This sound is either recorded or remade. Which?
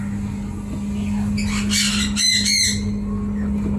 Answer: recorded